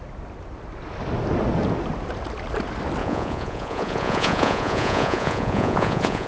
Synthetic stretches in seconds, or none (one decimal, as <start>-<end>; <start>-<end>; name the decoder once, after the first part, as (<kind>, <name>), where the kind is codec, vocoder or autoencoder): 3.0-6.3 (vocoder, Vocos)